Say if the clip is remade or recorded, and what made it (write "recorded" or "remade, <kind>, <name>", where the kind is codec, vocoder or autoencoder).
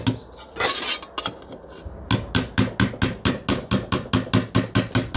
recorded